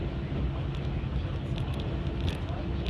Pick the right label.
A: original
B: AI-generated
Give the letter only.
A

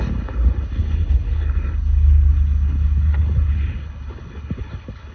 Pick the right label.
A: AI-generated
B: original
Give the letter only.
A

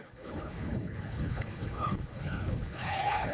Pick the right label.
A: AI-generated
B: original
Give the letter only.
A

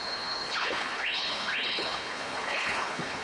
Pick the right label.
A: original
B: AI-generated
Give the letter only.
B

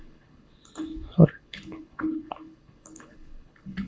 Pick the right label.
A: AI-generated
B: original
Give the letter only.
A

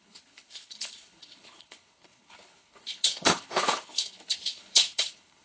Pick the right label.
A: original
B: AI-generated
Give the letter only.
B